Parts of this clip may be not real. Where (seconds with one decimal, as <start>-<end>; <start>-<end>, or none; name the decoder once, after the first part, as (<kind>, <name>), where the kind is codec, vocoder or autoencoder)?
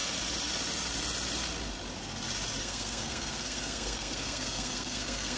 2.6-5.4 (codec, SNAC)